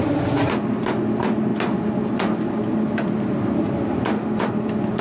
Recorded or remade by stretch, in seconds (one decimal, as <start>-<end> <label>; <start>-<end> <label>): 0.0-5.0 recorded